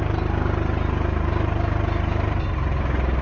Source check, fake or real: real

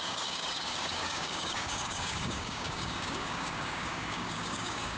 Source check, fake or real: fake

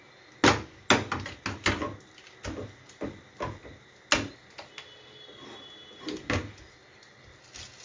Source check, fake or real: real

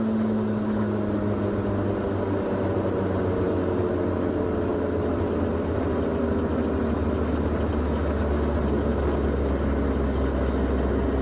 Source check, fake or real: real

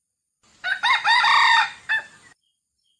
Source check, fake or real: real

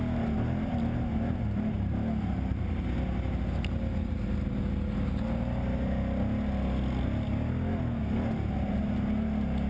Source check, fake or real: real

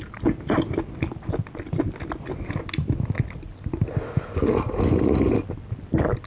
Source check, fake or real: real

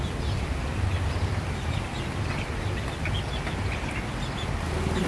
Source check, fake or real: real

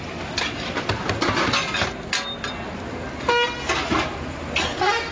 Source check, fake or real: real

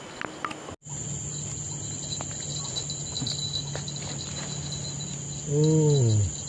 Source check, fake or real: real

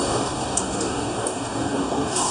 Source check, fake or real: fake